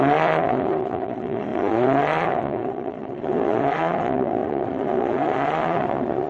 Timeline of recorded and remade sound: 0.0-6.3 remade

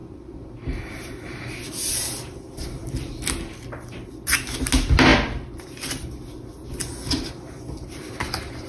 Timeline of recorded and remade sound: 0.0-8.7 recorded

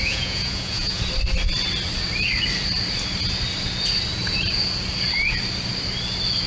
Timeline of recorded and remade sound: 0.0-1.0 remade; 1.0-6.5 recorded

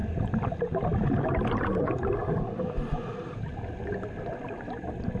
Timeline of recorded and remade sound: 0.0-5.2 recorded

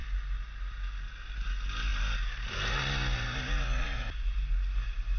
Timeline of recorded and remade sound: 0.0-5.2 recorded